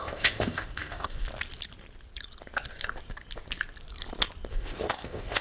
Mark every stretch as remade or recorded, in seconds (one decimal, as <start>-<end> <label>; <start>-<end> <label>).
0.0-1.3 remade; 1.3-4.5 recorded; 4.5-5.4 remade